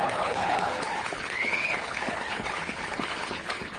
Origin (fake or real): fake